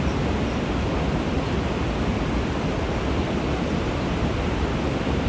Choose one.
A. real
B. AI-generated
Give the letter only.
A